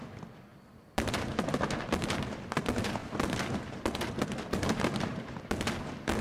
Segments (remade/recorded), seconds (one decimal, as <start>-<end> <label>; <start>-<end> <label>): 0.0-0.5 recorded; 0.5-1.3 remade; 1.3-3.0 recorded; 3.0-5.4 remade; 5.4-6.2 recorded